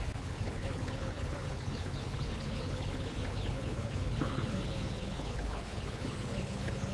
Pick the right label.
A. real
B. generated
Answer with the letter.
B